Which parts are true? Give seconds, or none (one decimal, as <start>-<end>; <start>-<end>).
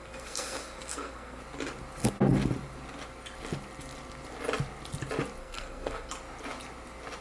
1.4-5.4; 6.1-7.2